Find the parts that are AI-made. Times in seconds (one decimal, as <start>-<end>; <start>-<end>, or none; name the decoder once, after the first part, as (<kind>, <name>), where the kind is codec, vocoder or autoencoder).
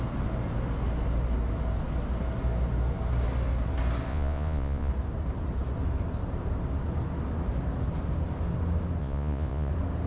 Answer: 4.1-4.9 (vocoder, Vocos); 9.0-9.7